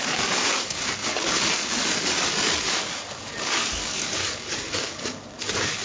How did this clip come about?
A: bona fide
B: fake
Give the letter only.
B